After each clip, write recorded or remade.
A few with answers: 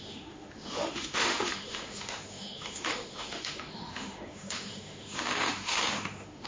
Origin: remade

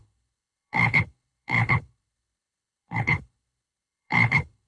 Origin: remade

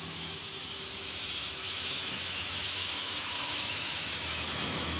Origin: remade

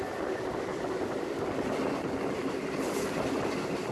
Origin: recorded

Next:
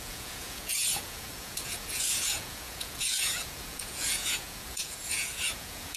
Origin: remade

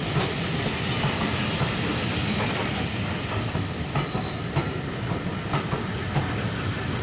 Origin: recorded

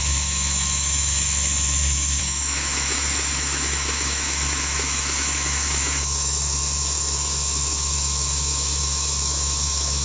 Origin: remade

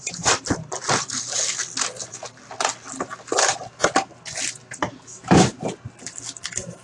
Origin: recorded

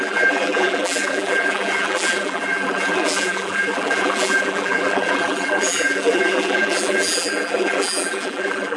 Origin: remade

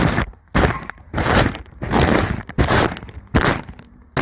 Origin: remade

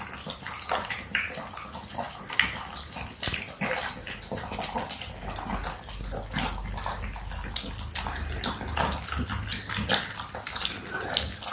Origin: recorded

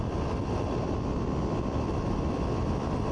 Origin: recorded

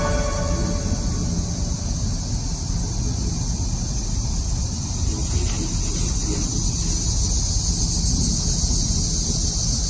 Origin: recorded